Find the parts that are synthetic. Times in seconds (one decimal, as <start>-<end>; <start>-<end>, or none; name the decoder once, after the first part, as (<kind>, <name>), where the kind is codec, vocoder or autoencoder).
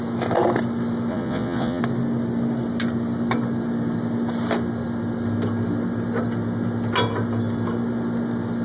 1.1-1.8 (vocoder, Vocos)